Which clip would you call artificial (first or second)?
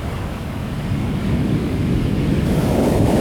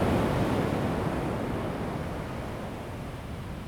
first